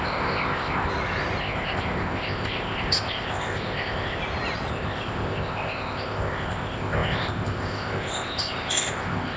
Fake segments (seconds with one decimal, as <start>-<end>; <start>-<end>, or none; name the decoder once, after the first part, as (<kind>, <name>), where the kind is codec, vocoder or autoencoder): 0.0-0.9 (codec, ZipCodec); 1.4-4.2; 4.7-9.4